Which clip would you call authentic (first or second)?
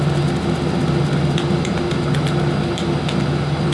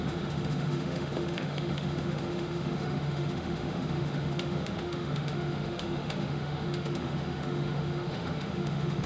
first